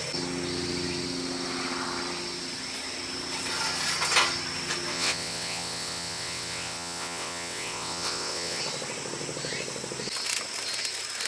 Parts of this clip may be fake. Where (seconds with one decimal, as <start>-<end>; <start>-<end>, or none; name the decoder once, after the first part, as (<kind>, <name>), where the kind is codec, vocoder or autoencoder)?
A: 4.9-8.6 (vocoder, WaveNeXt)